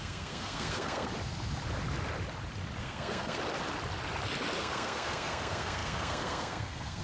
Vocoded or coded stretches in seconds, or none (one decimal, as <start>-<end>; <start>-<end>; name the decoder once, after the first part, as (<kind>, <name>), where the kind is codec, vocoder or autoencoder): 0.0-1.1 (codec, SNAC); 2.8-3.4; 4.6-7.0